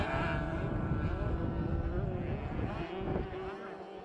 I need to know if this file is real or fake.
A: real